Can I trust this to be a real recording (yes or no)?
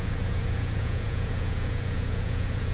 no